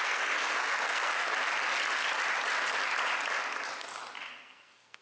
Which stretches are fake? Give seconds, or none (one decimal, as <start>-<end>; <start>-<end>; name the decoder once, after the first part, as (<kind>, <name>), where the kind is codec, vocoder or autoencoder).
0.0-1.3 (codec, SNAC); 4.3-5.0